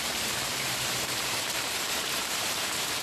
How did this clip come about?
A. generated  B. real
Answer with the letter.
A